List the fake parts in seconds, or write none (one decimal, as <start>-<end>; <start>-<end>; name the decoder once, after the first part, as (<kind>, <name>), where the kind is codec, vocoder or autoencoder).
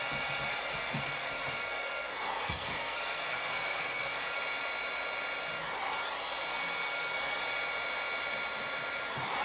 0.5-4.4 (codec, SNAC); 6.5-7.4